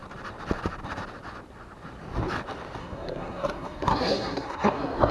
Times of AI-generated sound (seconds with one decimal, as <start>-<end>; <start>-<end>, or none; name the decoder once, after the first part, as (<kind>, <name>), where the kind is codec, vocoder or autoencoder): 2.8-5.1 (codec, SNAC)